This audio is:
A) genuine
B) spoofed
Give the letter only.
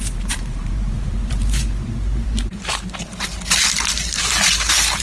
B